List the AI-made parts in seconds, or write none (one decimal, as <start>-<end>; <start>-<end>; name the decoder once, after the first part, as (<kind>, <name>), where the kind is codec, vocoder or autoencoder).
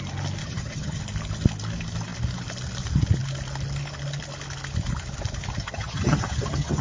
0.4-1.0 (vocoder, HiFi-GAN); 5.6-6.8